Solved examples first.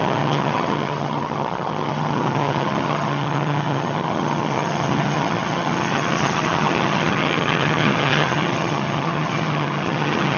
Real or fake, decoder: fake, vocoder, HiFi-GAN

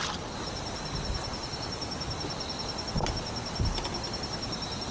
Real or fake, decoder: real